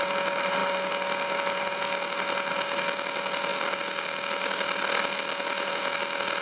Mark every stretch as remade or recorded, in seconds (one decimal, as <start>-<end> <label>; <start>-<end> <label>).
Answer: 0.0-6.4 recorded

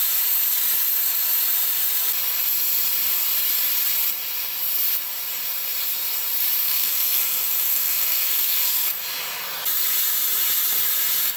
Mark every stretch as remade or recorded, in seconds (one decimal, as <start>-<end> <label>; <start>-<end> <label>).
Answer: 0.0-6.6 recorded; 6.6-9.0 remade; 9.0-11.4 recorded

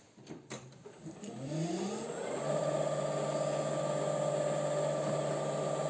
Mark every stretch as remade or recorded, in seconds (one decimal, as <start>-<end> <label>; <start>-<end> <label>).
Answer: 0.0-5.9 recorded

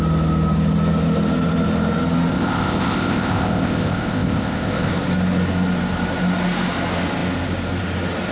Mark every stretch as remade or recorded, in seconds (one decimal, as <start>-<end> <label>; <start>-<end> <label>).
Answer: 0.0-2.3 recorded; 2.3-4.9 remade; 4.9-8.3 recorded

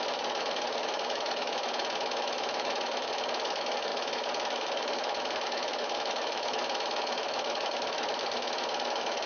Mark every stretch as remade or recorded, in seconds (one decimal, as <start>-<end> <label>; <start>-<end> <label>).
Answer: 0.0-9.3 remade